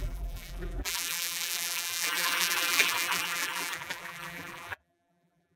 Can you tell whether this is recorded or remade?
remade